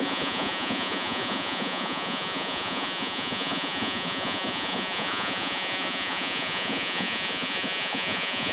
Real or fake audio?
fake